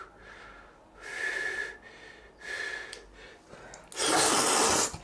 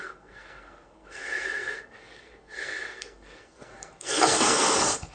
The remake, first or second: second